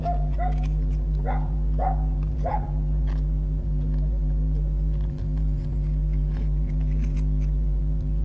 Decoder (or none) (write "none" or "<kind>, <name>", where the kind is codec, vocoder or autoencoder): vocoder, BigVGAN v2